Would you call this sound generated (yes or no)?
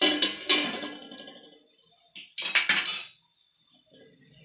no